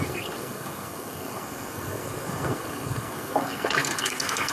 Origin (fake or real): fake